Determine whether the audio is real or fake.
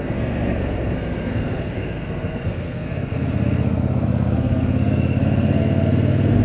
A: fake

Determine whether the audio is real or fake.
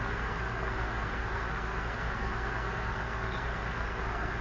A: fake